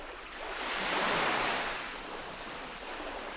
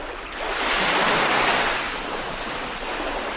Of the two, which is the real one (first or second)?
second